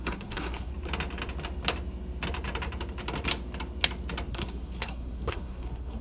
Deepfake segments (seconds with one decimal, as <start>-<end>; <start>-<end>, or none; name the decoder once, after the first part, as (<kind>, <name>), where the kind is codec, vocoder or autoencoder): 0.0-0.7 (codec, SNAC); 4.3-6.0